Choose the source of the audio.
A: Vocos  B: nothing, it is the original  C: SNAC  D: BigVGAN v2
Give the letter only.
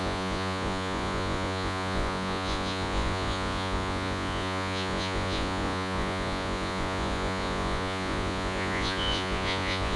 A